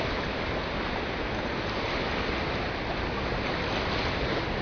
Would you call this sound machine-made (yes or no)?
no